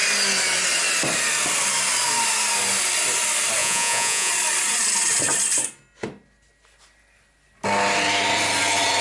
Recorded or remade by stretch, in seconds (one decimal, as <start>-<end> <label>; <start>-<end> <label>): 0.0-3.6 recorded; 3.6-4.3 remade; 4.3-9.0 recorded